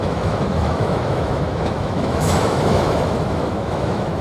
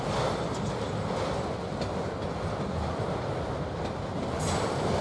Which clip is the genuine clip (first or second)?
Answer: second